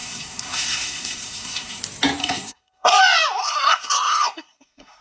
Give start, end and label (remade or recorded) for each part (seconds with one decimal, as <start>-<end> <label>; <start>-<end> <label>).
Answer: 0.0-1.8 remade; 1.8-2.2 recorded; 2.2-3.0 remade; 3.0-3.4 recorded; 3.4-5.0 remade